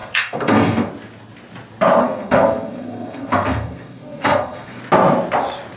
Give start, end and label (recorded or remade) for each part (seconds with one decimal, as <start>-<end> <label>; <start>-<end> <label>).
0.0-0.9 remade; 0.9-2.0 recorded; 2.0-4.8 remade; 4.8-5.8 recorded